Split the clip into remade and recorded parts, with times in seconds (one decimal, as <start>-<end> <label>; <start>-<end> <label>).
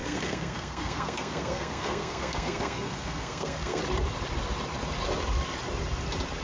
0.0-3.8 remade; 3.8-6.4 recorded